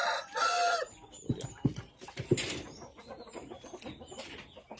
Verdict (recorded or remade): recorded